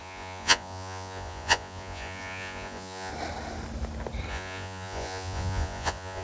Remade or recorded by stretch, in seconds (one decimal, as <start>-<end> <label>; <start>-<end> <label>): 0.0-3.1 remade; 3.1-4.3 recorded; 4.3-6.2 remade